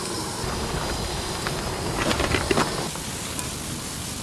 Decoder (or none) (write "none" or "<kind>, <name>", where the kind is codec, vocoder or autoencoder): none